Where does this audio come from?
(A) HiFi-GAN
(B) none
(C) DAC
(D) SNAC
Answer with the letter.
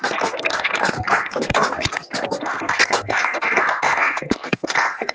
D